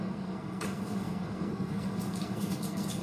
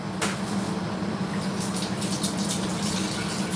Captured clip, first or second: second